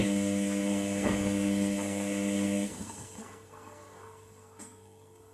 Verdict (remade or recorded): remade